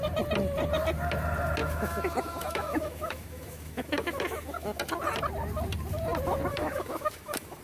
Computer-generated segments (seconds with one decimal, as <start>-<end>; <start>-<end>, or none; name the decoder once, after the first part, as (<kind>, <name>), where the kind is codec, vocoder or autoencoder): 1.6-4.8 (autoencoder, DAC-VAE); 6.5-7.6